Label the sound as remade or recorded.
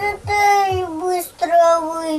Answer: recorded